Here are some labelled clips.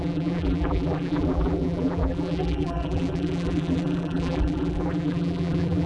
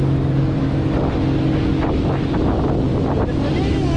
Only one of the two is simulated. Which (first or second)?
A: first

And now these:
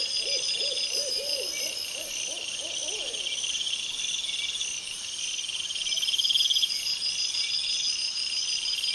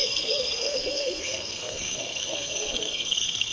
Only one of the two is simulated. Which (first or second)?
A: second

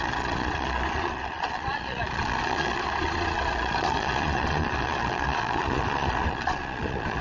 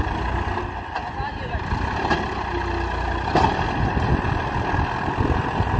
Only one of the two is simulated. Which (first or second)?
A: first